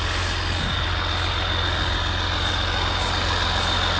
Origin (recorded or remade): recorded